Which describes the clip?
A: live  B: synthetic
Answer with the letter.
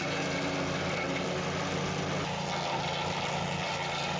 A